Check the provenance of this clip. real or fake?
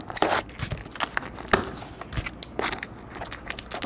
real